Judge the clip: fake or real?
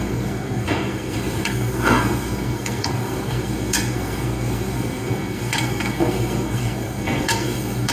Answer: fake